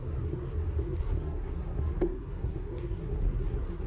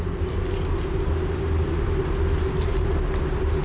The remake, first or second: first